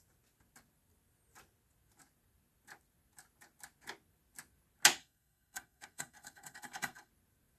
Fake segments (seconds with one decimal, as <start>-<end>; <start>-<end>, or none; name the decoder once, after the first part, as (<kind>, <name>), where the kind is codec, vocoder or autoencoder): 5.0-7.1 (codec, SNAC)